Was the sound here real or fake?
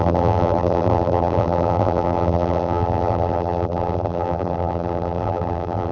fake